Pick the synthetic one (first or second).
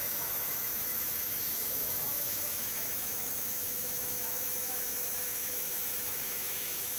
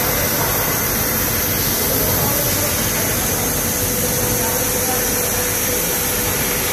first